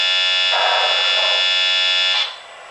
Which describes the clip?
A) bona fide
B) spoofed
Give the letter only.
A